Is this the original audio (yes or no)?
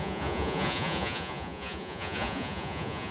no